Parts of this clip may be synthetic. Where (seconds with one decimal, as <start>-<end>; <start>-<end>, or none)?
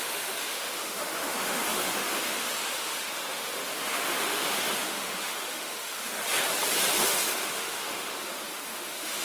0.0-6.1; 6.9-9.2